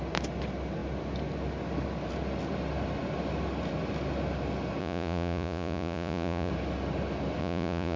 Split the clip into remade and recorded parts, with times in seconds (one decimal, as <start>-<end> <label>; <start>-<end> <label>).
0.0-4.8 recorded; 4.8-6.5 remade; 6.5-7.4 recorded; 7.4-8.0 remade